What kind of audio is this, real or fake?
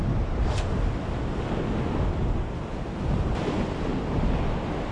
real